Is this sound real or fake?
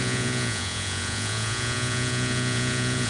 fake